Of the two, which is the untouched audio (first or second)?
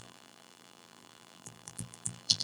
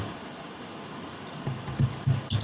second